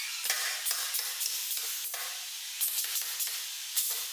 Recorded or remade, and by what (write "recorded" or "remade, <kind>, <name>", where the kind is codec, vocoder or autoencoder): recorded